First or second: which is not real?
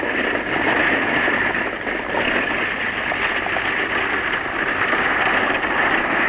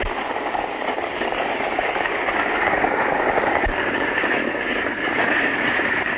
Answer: second